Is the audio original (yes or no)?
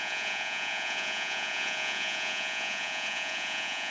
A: no